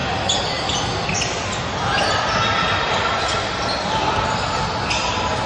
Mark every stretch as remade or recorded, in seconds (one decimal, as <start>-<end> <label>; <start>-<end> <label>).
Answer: 0.0-5.5 recorded